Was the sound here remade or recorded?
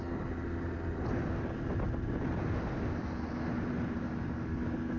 recorded